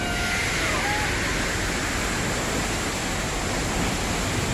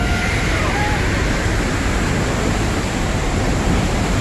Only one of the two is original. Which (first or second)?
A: first